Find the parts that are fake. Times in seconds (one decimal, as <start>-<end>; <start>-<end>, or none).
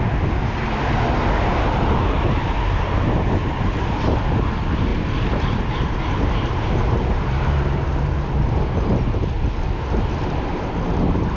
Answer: 4.9-8.3